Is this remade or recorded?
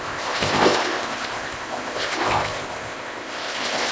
remade